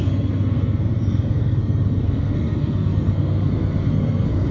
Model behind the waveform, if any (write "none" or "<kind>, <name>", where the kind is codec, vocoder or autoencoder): codec, SNAC